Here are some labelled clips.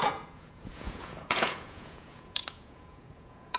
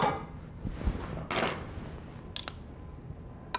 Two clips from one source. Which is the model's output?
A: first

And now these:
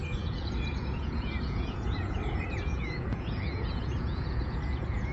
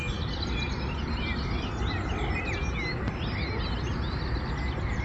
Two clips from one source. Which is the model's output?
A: first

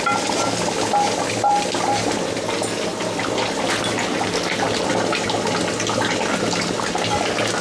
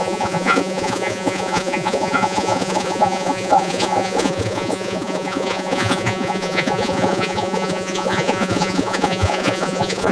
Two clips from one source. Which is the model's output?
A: second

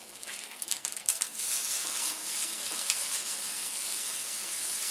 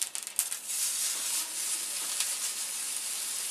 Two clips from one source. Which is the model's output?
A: first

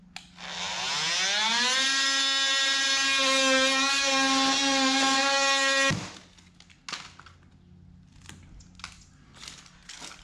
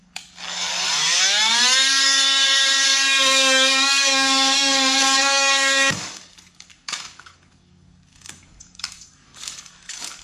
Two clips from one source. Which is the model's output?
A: second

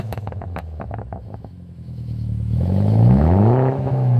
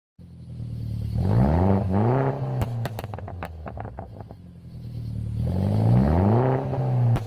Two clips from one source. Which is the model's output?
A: first